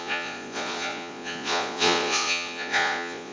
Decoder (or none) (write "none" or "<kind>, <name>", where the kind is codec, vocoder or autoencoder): vocoder, Vocos